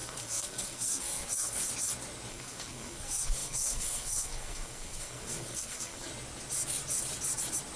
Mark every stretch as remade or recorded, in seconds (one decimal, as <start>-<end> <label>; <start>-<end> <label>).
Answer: 0.0-1.6 remade; 1.6-2.3 recorded; 2.3-6.1 remade; 6.1-7.8 recorded